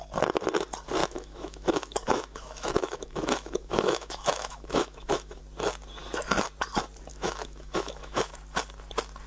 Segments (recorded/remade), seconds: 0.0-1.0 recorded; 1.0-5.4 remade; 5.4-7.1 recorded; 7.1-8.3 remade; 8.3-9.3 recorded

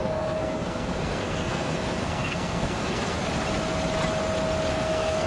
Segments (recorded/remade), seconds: 0.0-3.2 remade; 3.2-4.7 recorded; 4.7-5.3 remade

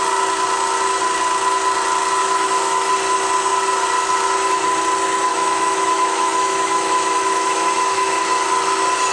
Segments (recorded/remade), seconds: 0.0-2.2 recorded; 2.2-2.9 remade; 2.9-5.3 recorded; 5.3-8.2 remade; 8.2-9.1 recorded